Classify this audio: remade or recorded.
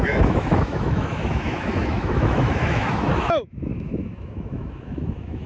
remade